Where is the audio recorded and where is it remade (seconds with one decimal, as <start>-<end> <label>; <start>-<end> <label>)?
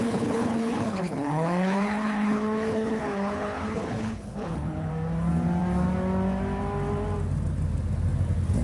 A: 0.0-4.9 remade; 4.9-8.6 recorded